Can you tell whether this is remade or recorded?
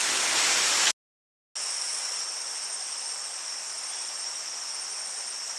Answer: recorded